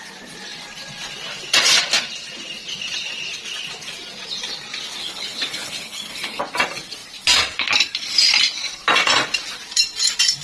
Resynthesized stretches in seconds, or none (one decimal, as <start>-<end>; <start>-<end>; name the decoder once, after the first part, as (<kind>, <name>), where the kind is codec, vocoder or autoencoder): 5.0-6.4 (codec, HILCodec)